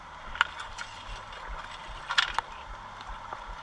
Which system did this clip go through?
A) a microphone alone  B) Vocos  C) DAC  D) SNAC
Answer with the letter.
A